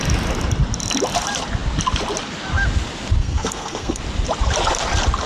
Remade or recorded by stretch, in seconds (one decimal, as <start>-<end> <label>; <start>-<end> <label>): 0.0-3.2 recorded; 3.2-4.0 remade; 4.0-5.3 recorded